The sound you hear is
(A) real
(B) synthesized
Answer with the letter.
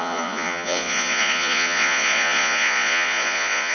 B